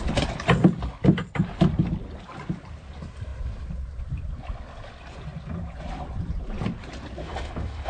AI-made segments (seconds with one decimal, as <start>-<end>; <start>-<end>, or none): 7.2-7.9